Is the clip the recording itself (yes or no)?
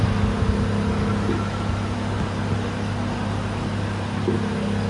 yes